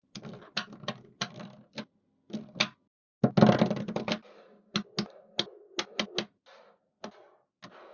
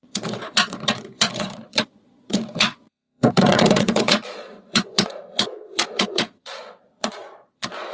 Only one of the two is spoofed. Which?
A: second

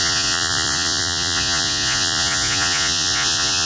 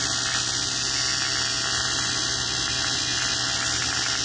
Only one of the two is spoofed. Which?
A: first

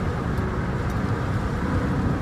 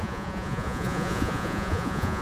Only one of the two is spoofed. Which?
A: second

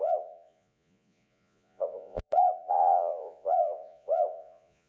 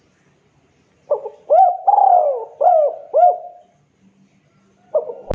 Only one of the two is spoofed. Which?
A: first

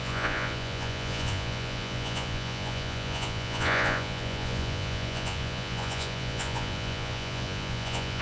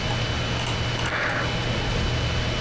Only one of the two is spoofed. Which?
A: first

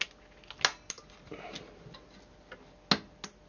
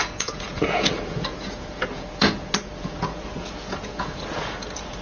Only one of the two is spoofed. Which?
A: second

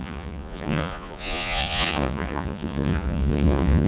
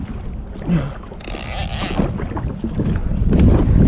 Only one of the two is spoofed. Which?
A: first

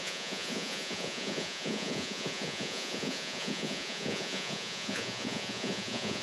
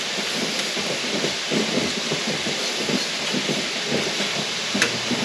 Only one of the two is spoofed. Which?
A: first